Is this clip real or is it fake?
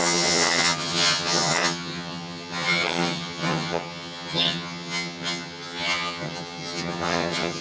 fake